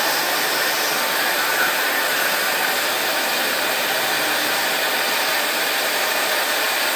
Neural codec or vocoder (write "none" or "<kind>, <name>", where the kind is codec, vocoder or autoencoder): none